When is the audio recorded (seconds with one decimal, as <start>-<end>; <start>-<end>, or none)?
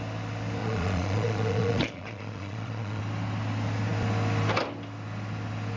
0.0-0.6; 3.0-5.8